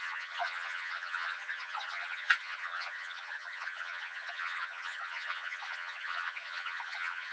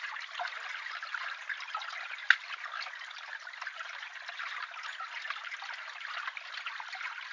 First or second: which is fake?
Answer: first